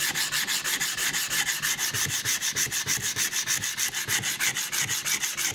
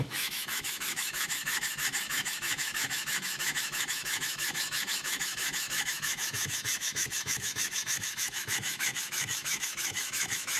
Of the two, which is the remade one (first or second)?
second